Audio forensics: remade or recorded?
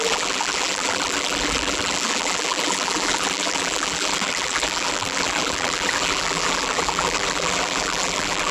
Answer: remade